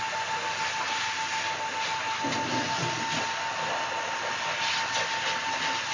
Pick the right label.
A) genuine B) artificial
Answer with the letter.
A